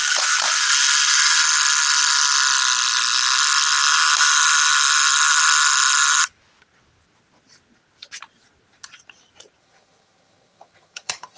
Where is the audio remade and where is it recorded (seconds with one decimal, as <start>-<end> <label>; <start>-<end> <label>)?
0.0-9.6 recorded; 9.6-11.4 remade